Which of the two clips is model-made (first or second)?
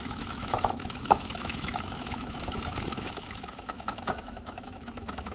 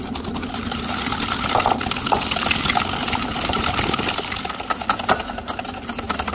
first